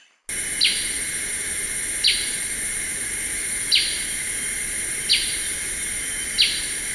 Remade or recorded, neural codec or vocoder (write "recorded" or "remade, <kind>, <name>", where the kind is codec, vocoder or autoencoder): recorded